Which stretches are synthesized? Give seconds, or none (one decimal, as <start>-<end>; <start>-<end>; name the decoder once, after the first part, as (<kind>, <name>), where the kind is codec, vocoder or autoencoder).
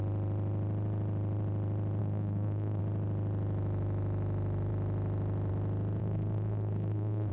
2.0-2.8 (codec, SNAC); 6.0-7.3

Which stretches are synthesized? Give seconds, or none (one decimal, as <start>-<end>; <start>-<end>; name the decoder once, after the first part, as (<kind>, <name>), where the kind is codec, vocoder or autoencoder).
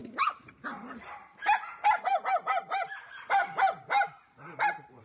3.4-5.0 (vocoder, BigVGAN v2)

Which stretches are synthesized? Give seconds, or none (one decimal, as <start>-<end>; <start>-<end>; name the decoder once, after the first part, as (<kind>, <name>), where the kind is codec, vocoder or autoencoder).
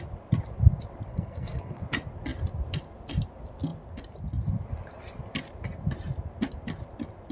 1.1-1.8 (codec, SNAC)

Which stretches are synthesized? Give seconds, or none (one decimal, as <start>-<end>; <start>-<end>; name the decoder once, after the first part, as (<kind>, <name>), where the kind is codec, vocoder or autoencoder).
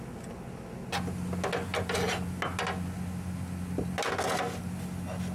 none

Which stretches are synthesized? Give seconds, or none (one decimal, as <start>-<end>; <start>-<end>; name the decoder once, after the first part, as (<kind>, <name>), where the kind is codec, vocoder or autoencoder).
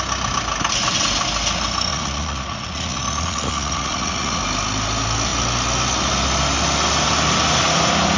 1.9-4.4 (vocoder, Vocos)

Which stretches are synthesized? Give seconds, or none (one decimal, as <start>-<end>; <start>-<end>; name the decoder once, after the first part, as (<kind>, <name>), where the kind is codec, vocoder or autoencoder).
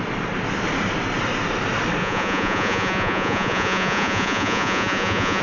2.0-5.4 (vocoder, Vocos)